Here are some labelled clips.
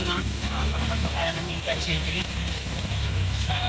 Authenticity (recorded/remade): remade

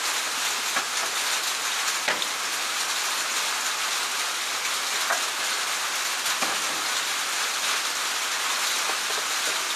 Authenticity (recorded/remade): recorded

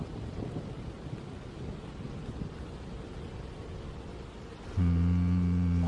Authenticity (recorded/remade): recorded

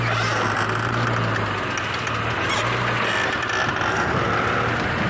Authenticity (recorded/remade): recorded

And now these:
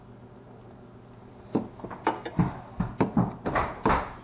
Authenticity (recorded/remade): recorded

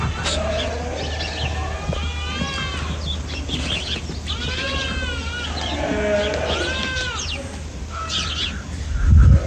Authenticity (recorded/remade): recorded